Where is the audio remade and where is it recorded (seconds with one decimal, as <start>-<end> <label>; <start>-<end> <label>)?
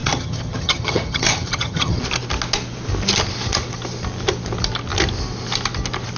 0.0-2.0 remade; 2.0-6.2 recorded